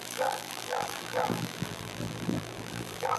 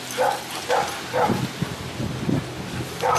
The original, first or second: second